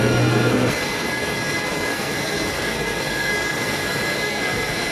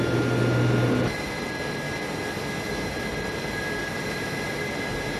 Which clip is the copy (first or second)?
first